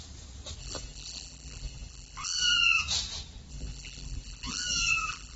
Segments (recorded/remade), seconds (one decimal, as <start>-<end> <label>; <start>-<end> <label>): 0.0-0.6 recorded; 0.6-2.8 remade; 2.8-3.5 recorded; 3.5-5.4 remade